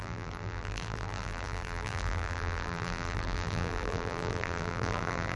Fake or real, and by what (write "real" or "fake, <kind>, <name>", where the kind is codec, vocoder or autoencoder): fake, vocoder, BigVGAN v2